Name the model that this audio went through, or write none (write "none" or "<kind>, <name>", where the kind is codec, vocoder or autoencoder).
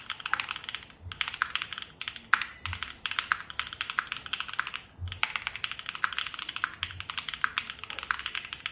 none